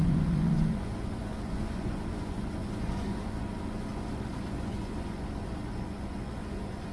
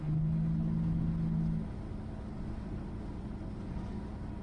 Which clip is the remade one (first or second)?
first